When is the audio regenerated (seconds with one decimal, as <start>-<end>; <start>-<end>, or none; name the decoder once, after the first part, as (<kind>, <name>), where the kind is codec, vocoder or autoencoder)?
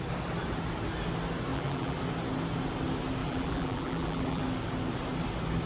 1.5-2.0 (vocoder, BigVGAN v2); 3.2-4.4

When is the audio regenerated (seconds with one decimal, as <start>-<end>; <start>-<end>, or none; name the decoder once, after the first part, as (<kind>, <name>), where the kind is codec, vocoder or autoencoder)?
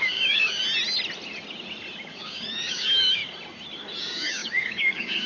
0.0-0.6 (codec, DAC); 2.1-3.2; 4.0-5.3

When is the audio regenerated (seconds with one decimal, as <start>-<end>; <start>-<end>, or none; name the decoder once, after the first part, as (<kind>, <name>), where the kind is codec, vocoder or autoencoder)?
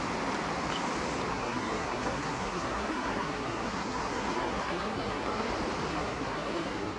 1.3-5.5 (codec, SNAC); 5.9-7.0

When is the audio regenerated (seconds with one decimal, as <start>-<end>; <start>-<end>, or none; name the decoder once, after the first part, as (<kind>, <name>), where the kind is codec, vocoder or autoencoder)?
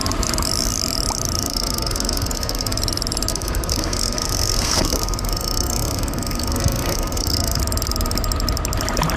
1.4-2.8 (codec, SNAC); 3.3-7.6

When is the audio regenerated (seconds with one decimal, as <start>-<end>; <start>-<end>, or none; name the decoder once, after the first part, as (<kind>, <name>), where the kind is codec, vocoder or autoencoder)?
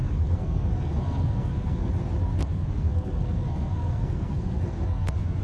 0.0-1.9 (codec, SNAC); 2.4-5.4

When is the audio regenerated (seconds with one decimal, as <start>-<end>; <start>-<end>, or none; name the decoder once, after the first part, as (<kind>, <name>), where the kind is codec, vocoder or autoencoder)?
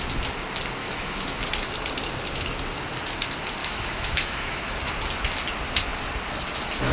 0.8-1.4 (autoencoder, DAC-VAE); 3.6-4.7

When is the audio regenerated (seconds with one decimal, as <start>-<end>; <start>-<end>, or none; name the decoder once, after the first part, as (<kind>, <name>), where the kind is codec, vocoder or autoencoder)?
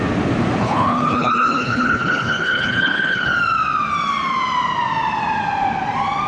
0.6-3.3 (codec, HILCodec)